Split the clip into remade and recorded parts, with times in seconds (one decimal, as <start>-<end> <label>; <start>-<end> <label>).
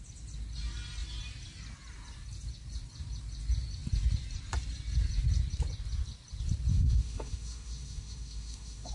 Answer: 0.0-6.7 recorded; 6.7-8.9 remade